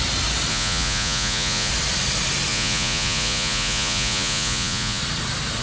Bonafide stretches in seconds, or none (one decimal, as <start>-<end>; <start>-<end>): 0.0-0.5; 1.7-2.5; 5.0-5.6